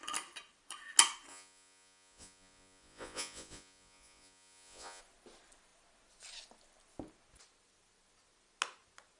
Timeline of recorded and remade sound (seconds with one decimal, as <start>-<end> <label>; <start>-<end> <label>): 0.0-1.3 recorded; 1.3-5.0 remade; 5.0-9.2 recorded